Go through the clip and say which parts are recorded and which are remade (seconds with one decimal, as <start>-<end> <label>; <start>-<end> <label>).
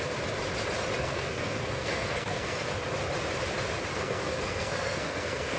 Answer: 0.0-1.0 recorded; 1.0-2.7 remade; 2.7-3.9 recorded; 3.9-5.6 remade